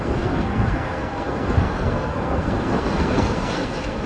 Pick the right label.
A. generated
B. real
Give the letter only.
A